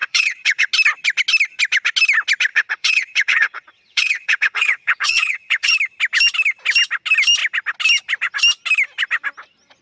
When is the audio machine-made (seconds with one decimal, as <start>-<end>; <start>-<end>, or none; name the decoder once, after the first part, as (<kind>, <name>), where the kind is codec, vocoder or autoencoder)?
0.0-0.7 (vocoder, WaveNeXt); 2.5-5.7